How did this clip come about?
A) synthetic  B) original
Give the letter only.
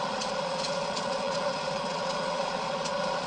A